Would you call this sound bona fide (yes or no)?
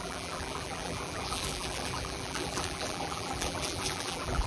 no